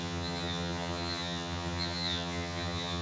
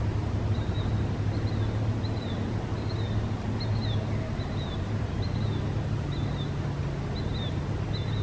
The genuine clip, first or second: second